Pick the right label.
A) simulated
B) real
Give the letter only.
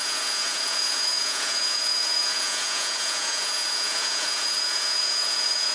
A